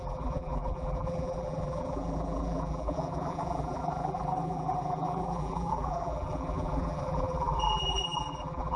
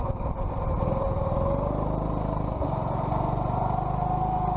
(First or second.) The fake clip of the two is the first